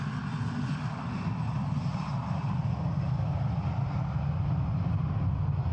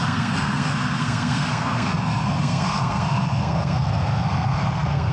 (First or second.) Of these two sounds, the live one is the first